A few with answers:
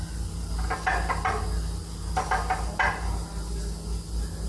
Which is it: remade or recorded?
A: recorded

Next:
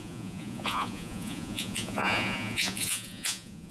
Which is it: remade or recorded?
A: remade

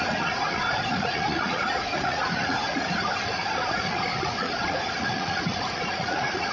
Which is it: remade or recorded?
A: remade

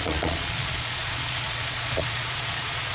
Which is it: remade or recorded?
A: remade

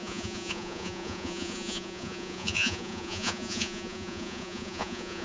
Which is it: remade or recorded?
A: remade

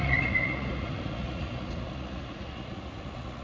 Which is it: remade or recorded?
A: remade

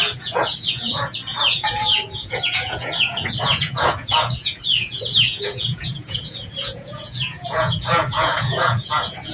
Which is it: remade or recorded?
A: remade